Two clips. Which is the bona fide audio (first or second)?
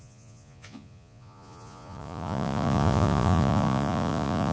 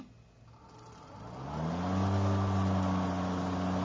second